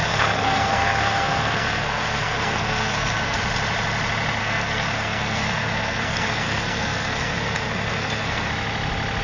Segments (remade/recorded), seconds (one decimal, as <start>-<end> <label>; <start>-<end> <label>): 0.0-3.4 remade; 3.4-4.4 recorded; 4.4-8.5 remade; 8.5-9.2 recorded